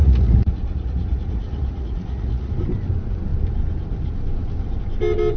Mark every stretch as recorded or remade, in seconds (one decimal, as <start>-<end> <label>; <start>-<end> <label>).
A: 0.0-2.5 remade; 2.5-5.4 recorded